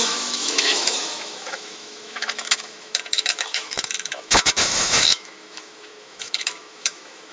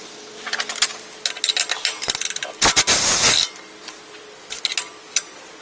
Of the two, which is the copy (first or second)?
first